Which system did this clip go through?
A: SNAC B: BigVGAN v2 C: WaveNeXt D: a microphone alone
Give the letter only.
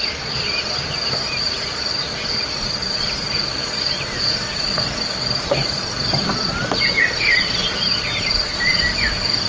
D